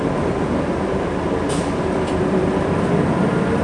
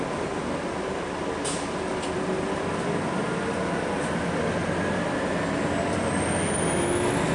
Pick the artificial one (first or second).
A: first